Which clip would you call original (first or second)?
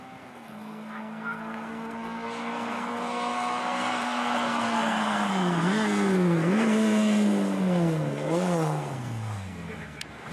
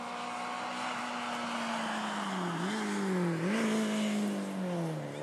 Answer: second